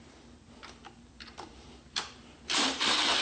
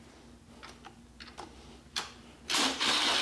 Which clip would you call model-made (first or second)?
first